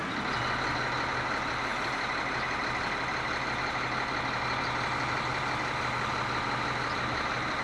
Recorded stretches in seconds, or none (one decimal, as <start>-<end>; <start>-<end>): 0.0-7.6